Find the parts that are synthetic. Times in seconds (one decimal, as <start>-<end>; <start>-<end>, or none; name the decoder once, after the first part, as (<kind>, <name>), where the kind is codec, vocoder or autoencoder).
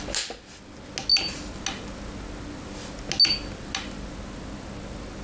none